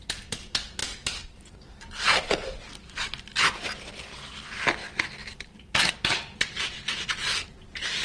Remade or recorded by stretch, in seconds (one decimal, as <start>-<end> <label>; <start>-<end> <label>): 0.0-8.0 remade